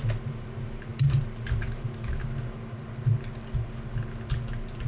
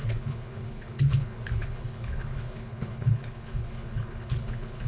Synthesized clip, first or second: second